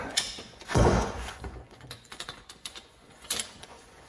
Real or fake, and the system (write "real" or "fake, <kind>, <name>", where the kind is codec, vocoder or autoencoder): fake, vocoder, Vocos